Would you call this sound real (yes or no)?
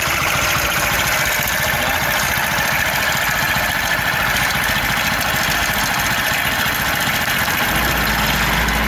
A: yes